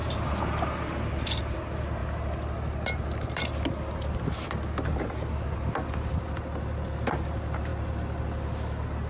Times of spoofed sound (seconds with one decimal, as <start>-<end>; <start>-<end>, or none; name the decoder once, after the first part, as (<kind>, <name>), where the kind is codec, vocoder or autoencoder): none